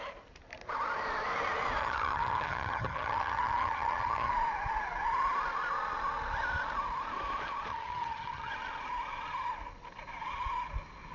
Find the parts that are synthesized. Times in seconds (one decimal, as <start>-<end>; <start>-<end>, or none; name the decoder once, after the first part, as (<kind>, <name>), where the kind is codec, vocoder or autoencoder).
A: 1.8-4.3 (vocoder, HiFi-GAN); 7.7-8.5